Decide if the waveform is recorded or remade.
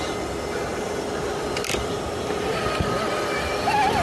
recorded